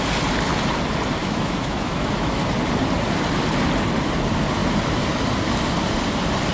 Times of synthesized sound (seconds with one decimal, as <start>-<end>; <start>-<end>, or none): 1.2-2.4